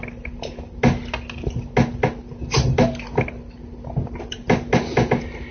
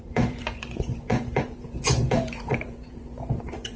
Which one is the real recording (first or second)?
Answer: first